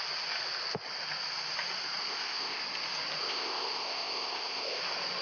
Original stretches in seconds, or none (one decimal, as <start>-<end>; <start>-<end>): 0.0-2.0; 2.6-3.2; 4.8-5.2